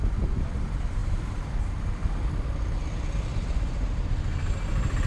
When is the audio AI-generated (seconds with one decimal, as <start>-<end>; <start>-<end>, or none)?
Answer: 0.0-1.0; 1.6-2.0